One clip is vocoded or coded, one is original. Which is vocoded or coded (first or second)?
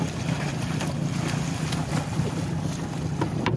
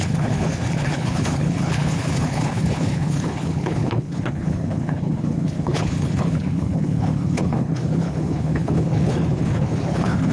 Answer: second